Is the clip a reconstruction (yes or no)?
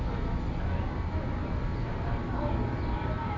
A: no